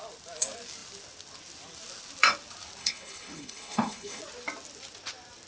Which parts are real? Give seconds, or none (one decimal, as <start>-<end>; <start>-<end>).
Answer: 0.0-2.8; 4.2-5.5